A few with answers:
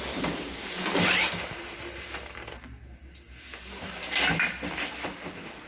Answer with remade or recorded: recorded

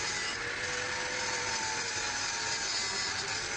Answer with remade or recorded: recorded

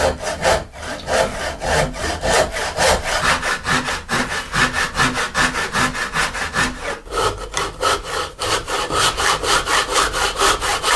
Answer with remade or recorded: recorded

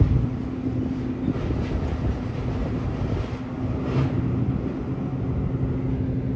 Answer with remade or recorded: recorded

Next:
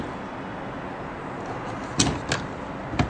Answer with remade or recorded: recorded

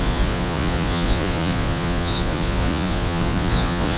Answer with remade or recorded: remade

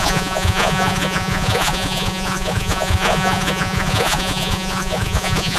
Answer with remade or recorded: remade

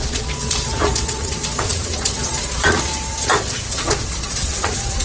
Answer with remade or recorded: remade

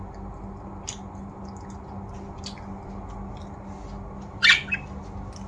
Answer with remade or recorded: recorded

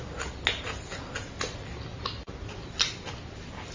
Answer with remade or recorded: recorded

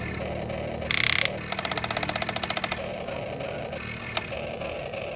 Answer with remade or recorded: recorded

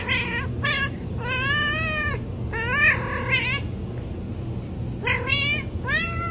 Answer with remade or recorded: recorded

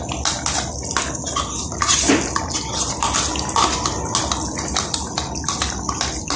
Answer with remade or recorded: recorded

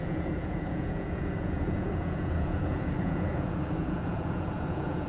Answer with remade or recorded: remade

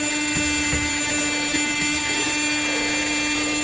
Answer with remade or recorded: recorded